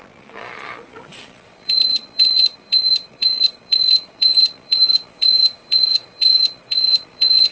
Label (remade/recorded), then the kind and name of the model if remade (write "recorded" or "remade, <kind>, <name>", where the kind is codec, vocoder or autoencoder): remade, vocoder, Vocos